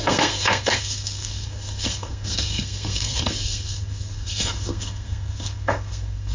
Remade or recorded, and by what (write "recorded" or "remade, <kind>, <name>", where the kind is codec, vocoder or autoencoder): remade, codec, SNAC